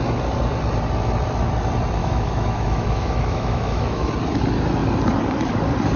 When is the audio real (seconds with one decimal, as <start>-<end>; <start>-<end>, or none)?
0.0-2.0; 4.1-6.0